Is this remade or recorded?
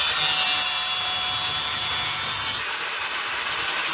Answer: recorded